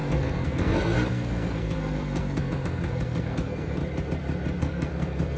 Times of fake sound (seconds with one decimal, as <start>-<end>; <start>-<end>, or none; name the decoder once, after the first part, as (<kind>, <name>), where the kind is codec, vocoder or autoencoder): 0.0-3.8 (codec, SNAC); 4.6-5.4